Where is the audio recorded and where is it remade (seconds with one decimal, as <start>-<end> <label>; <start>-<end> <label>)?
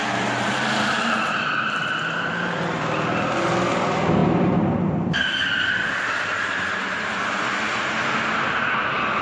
0.0-9.2 recorded